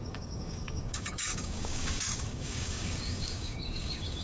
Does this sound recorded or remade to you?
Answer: remade